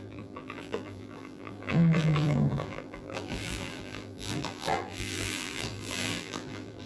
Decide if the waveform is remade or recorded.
remade